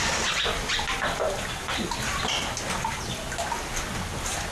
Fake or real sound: real